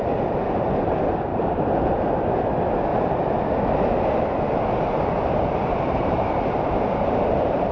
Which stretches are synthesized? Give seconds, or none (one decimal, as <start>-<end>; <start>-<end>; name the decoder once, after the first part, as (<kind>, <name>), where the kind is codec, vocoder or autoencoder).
1.3-2.2 (vocoder, BigVGAN v2); 2.9-7.7